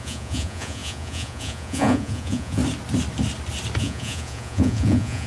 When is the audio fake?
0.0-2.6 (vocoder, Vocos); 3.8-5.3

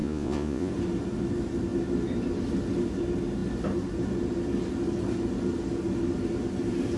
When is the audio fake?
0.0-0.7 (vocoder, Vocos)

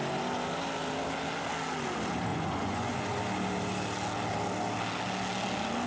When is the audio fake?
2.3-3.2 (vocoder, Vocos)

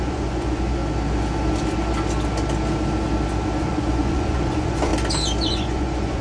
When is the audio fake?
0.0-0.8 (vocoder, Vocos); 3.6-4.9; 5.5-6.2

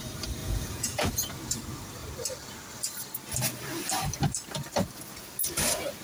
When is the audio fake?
0.4-1.3 (vocoder, Vocos)